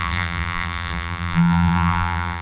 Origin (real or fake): fake